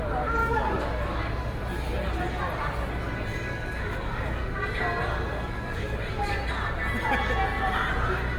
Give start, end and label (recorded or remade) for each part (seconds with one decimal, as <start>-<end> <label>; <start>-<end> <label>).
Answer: 0.0-0.4 recorded; 0.4-1.4 remade; 1.4-3.3 recorded; 3.3-4.4 remade; 4.4-5.3 recorded; 5.3-6.3 remade; 6.3-8.4 recorded